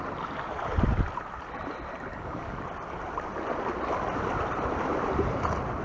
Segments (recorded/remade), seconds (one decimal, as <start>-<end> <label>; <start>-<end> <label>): 0.0-2.1 recorded; 2.1-2.6 remade; 2.6-5.8 recorded